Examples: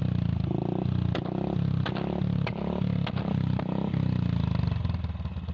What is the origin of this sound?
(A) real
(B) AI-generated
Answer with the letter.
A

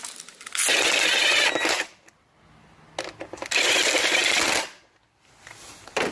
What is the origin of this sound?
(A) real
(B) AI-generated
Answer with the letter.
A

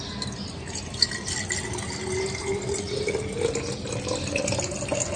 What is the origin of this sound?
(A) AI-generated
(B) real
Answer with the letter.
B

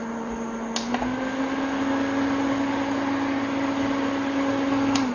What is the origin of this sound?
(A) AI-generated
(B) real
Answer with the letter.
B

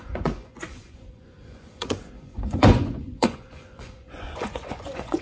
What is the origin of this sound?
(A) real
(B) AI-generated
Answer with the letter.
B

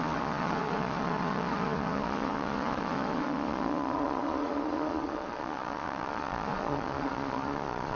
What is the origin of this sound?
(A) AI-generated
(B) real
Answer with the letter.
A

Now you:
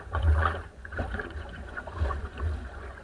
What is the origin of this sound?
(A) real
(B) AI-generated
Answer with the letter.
B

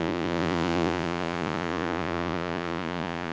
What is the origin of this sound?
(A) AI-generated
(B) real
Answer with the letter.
A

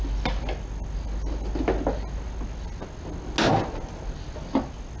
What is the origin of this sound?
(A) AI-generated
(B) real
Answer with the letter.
B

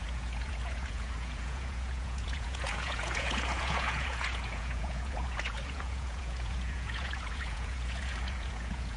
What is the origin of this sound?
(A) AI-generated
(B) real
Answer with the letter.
A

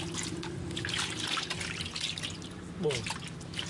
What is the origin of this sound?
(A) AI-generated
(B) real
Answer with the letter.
B